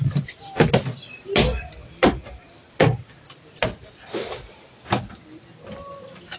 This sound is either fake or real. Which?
real